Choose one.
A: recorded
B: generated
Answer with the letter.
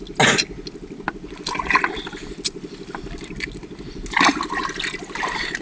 A